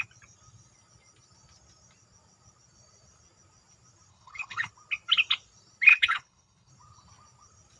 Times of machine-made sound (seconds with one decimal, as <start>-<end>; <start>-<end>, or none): 4.1-4.7; 5.9-6.7